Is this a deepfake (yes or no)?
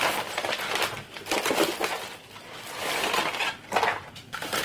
no